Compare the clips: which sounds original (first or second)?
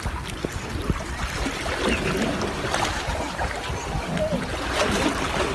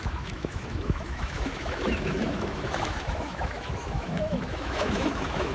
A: first